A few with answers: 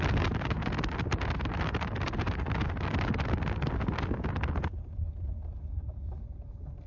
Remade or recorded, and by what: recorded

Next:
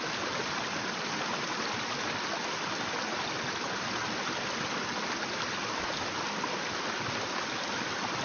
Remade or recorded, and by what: recorded